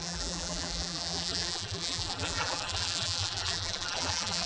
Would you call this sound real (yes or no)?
no